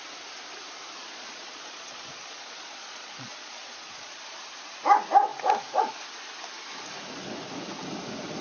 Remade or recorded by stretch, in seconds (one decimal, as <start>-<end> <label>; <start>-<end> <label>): 0.0-1.0 recorded; 1.0-4.2 remade; 4.2-8.4 recorded

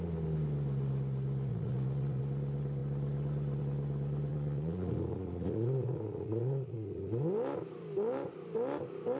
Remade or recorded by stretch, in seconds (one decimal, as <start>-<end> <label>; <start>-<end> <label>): 0.0-1.5 recorded; 1.5-2.2 remade; 2.2-4.3 recorded; 4.3-7.1 remade; 7.1-9.2 recorded

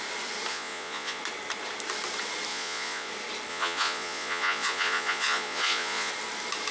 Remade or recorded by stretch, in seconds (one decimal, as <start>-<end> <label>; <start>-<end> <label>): 0.0-0.5 recorded; 0.5-1.2 remade; 1.2-2.5 recorded; 2.5-3.1 remade; 3.1-3.5 recorded; 3.5-6.1 remade; 6.1-6.7 recorded

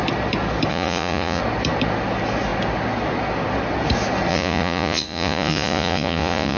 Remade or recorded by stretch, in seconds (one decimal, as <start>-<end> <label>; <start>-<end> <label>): 0.0-0.7 recorded; 0.7-1.4 remade; 1.4-4.3 recorded; 4.3-6.6 remade